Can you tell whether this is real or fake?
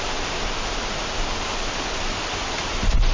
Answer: real